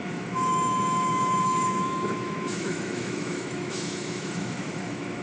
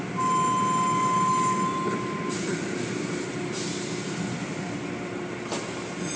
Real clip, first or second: second